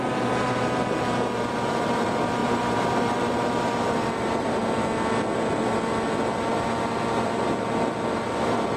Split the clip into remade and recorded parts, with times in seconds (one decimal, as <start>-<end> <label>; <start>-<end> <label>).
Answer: 0.0-4.6 remade; 4.6-8.4 recorded; 8.4-8.8 remade